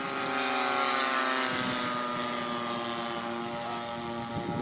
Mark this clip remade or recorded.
recorded